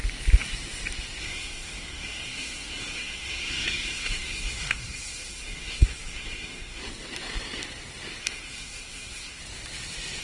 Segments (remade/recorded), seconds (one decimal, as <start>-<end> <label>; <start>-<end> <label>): 0.0-1.2 recorded; 1.2-6.8 remade; 6.8-8.2 recorded; 8.2-9.4 remade; 9.4-10.2 recorded